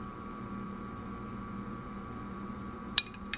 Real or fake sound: fake